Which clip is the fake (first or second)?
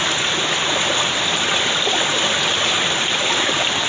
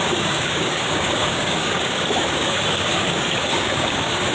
second